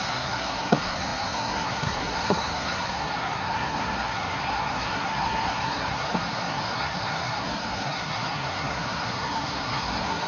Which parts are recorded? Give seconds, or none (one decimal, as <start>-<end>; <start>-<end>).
none